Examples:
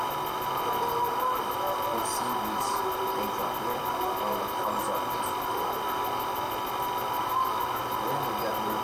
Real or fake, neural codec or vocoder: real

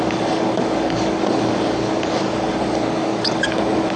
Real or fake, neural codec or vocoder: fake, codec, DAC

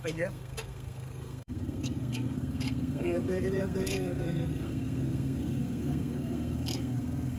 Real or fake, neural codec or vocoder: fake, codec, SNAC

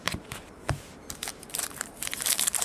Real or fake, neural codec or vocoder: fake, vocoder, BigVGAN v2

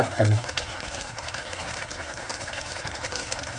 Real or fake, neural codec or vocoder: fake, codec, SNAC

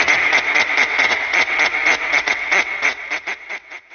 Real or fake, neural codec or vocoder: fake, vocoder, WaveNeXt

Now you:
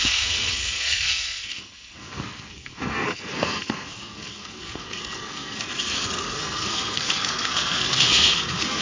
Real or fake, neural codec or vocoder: fake, codec, SNAC